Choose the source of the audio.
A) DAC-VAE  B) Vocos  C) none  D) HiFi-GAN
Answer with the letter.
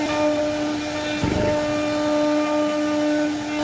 C